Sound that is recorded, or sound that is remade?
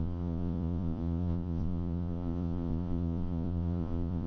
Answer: remade